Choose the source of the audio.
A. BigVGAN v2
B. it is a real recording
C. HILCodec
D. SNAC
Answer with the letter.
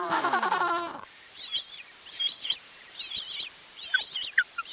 A